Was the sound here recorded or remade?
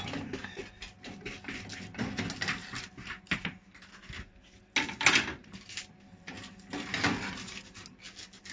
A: recorded